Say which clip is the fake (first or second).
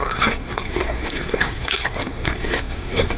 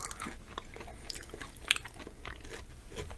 first